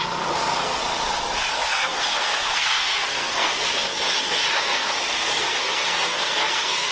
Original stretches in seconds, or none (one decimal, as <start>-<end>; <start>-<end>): 0.8-1.5

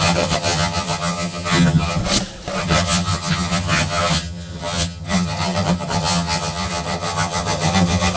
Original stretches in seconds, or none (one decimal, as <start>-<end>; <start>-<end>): 2.0-2.6

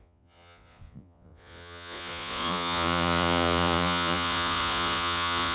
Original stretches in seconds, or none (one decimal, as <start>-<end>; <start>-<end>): none

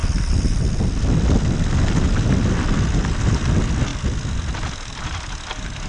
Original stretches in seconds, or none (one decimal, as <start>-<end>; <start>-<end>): 0.0-5.9